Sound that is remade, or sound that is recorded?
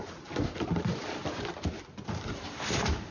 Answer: recorded